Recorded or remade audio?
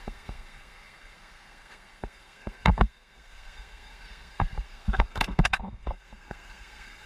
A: remade